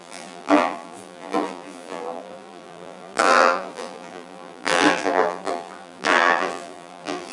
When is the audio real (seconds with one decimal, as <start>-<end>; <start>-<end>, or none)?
none